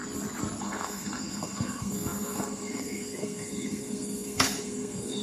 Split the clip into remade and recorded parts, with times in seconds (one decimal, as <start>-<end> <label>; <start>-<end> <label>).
0.0-0.6 recorded; 0.6-5.2 remade